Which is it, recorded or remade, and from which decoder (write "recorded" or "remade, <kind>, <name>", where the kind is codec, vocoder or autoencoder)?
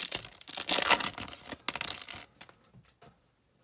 recorded